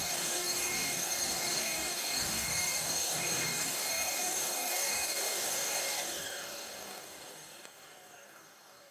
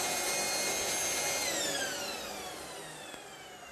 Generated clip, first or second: first